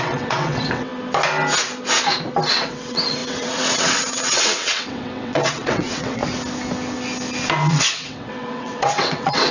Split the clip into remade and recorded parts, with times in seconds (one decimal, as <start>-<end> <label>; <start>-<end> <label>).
0.0-0.9 remade; 0.9-2.5 recorded; 2.5-6.2 remade; 6.2-7.7 recorded; 7.7-9.5 remade